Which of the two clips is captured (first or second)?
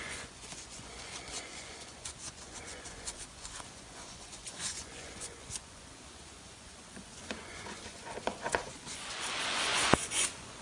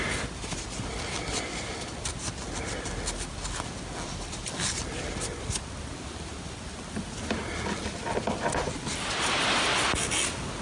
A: second